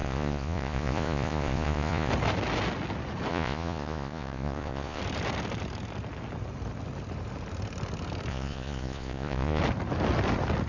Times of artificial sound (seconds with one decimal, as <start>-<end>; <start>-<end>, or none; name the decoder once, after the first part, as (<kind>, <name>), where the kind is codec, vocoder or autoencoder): 0.0-2.1 (vocoder, Vocos); 3.3-5.0; 8.3-9.6